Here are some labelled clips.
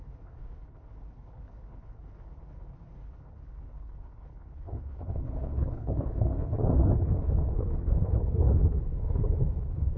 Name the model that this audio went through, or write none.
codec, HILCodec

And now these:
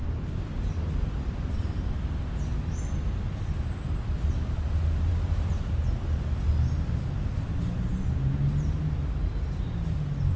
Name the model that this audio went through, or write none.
none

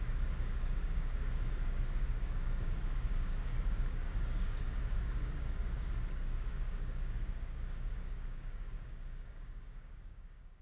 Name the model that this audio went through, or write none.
codec, DAC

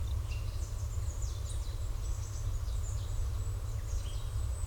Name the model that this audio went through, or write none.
none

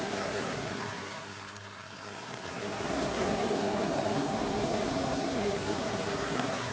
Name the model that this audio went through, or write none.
codec, SNAC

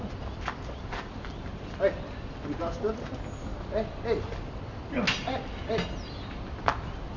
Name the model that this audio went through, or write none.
none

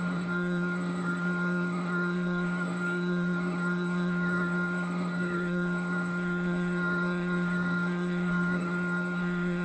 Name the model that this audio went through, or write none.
codec, SNAC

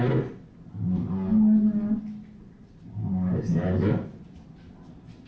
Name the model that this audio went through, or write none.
none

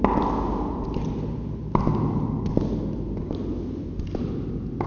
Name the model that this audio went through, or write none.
none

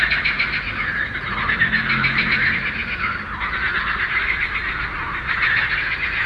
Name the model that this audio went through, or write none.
none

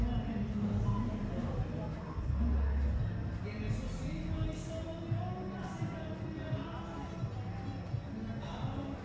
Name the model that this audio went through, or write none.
none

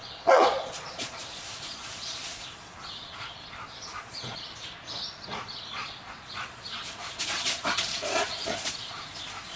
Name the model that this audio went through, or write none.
vocoder, Vocos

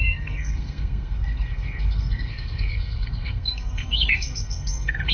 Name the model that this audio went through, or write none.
codec, SNAC